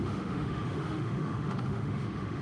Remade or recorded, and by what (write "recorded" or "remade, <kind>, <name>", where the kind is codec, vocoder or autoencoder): remade, autoencoder, DAC-VAE